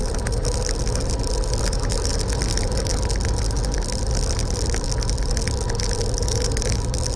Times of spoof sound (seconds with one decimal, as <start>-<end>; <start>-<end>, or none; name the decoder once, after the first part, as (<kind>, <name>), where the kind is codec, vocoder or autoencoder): none